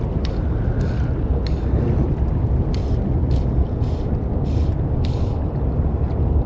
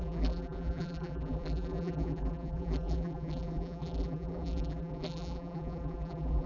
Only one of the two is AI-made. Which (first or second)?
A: second